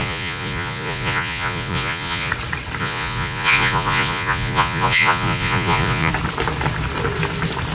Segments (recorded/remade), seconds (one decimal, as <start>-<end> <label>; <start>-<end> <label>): 0.0-2.3 remade; 2.3-2.8 recorded; 2.8-6.1 remade; 6.1-7.7 recorded